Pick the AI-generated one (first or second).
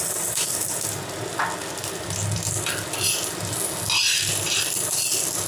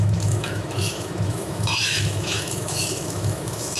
second